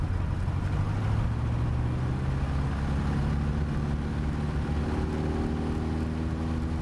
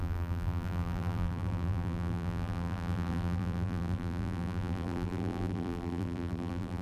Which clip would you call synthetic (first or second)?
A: second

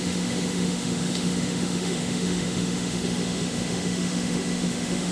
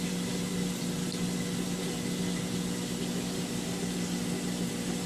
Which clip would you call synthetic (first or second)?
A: first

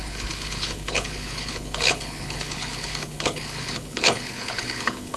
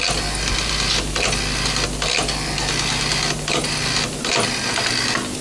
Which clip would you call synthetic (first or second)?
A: first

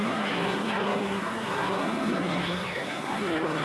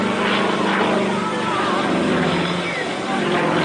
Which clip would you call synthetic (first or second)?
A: first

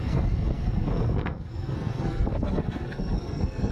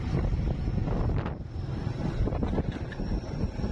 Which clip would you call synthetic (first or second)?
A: first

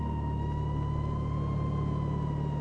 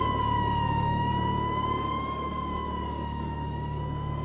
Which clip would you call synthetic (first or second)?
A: second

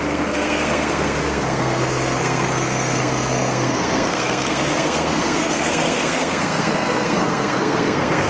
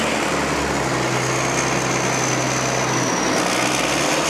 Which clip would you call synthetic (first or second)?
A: first